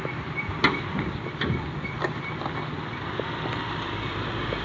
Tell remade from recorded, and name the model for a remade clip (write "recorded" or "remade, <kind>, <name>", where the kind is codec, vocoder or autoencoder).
remade, vocoder, BigVGAN v2